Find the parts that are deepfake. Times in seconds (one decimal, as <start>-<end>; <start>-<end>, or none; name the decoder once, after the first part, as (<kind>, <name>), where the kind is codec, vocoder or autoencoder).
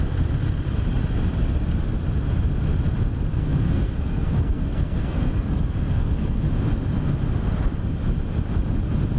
3.3-6.5 (codec, SNAC)